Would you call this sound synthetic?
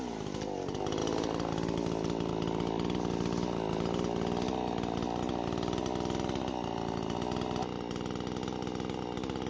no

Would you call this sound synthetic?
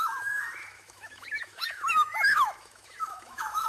yes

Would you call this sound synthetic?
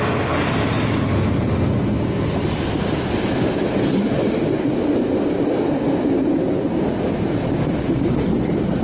no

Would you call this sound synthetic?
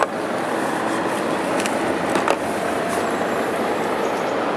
no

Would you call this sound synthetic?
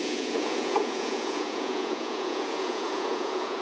yes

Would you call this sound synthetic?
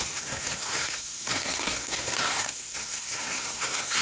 yes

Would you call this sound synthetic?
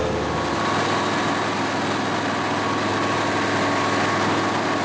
no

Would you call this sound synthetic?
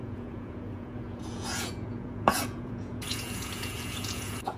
yes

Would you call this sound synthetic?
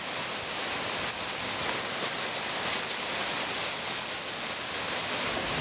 no